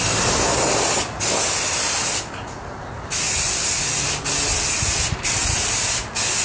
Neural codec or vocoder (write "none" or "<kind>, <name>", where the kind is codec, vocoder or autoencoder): none